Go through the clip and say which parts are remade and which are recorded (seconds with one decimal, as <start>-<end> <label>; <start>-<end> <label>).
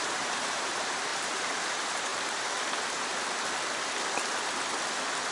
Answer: 0.0-2.1 remade; 2.1-5.3 recorded